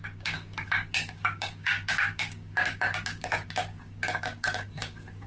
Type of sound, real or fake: fake